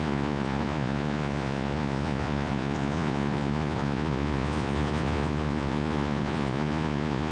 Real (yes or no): no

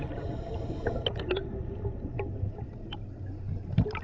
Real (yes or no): yes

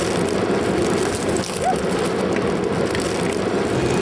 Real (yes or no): yes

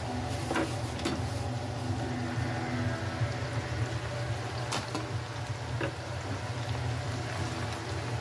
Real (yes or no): yes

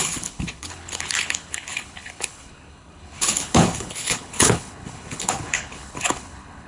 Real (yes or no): no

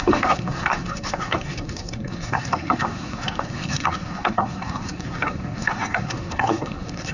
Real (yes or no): no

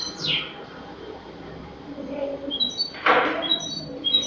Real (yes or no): no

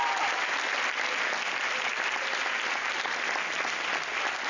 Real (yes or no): yes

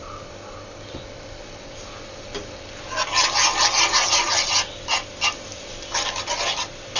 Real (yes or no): yes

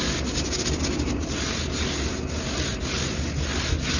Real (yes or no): yes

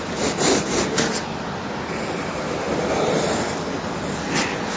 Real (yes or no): yes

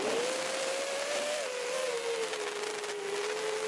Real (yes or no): yes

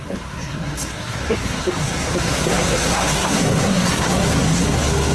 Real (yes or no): no